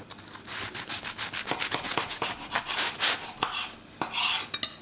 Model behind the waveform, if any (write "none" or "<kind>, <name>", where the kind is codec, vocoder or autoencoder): none